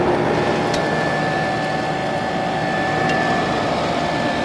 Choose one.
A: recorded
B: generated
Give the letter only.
A